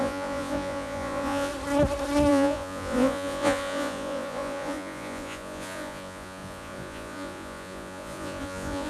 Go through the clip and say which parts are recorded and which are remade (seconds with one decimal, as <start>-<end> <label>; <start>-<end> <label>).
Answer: 0.0-1.5 remade; 1.5-2.3 recorded; 2.3-8.9 remade